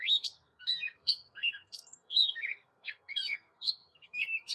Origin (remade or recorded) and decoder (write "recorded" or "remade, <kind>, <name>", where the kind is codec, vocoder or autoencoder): remade, codec, SNAC